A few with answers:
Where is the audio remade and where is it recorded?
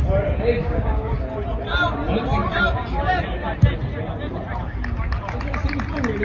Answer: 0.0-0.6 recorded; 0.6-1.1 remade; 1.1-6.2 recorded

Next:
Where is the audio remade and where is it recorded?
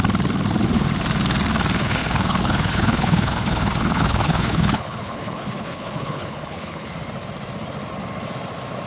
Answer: 0.0-1.8 recorded; 1.8-6.9 remade; 6.9-8.9 recorded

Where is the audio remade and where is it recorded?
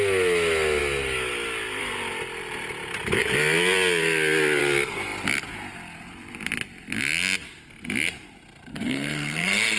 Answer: 0.0-8.7 recorded; 8.7-9.8 remade